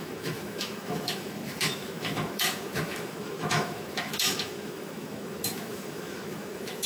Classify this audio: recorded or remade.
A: remade